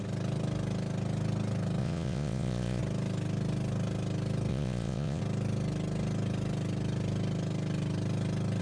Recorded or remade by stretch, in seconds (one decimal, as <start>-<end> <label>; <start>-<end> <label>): 0.0-1.8 recorded; 1.8-2.8 remade; 2.8-4.5 recorded; 4.5-5.2 remade; 5.2-8.6 recorded